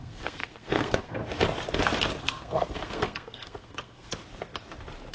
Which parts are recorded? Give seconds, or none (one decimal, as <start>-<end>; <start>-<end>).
1.2-2.2; 4.1-5.1